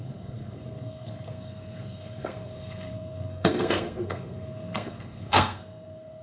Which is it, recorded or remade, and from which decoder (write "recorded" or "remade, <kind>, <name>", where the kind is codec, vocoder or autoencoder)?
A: remade, codec, SNAC